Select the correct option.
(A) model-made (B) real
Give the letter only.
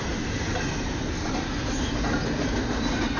B